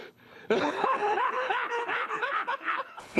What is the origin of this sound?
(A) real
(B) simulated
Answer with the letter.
B